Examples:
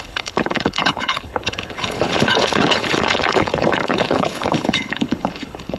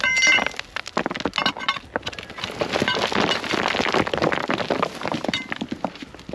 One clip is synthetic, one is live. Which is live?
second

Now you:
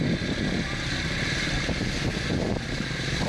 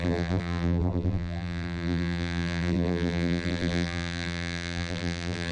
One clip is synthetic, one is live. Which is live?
first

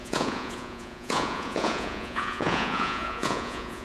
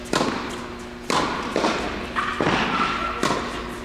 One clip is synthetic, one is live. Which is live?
second